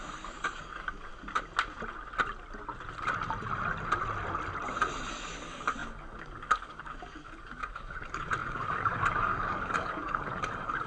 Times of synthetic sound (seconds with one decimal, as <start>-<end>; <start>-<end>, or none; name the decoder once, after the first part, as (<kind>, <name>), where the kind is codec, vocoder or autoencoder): 0.0-1.1 (codec, DAC); 5.1-10.9